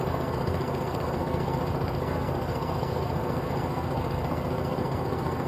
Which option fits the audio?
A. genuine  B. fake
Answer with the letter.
B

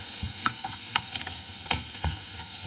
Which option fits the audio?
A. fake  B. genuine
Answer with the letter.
A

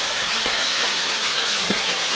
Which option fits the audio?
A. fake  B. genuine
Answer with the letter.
A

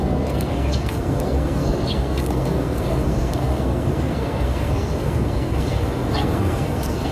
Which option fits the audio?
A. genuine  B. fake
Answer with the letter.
B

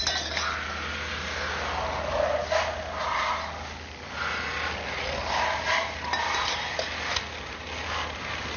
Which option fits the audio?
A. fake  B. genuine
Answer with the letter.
B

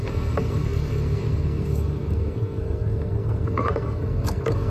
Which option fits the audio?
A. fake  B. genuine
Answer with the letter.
A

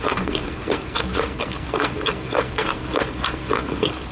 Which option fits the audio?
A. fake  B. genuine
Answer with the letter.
A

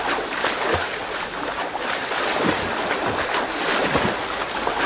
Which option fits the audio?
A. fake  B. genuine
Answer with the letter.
B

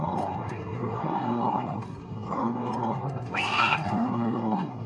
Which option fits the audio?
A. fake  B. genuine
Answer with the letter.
A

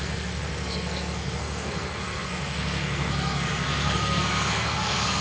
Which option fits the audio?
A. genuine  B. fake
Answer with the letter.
B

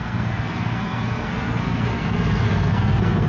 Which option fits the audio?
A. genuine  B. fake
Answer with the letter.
B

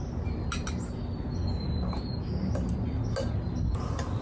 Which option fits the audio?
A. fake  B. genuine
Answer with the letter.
B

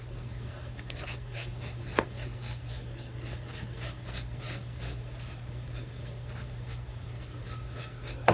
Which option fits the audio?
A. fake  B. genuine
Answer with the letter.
A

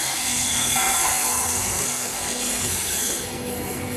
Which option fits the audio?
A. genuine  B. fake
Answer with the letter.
B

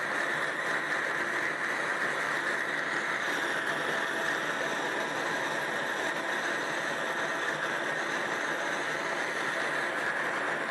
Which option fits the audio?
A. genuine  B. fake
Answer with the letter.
A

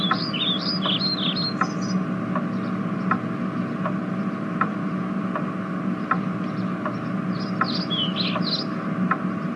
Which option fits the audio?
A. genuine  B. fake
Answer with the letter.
A